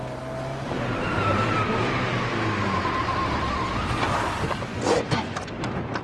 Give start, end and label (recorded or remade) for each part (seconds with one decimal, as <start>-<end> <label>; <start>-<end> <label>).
0.0-4.7 recorded; 4.7-5.5 remade; 5.5-6.0 recorded